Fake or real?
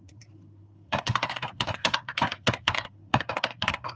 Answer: fake